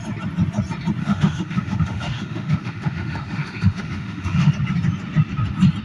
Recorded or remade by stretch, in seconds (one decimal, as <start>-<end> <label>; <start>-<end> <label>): 0.0-1.0 recorded; 1.0-4.5 remade; 4.5-5.8 recorded